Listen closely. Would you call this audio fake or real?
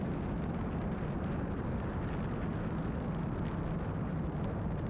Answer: real